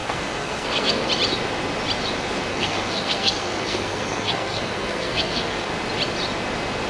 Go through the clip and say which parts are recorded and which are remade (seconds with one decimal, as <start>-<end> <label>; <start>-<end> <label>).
0.0-1.1 remade; 1.1-2.5 recorded; 2.5-5.7 remade; 5.7-6.9 recorded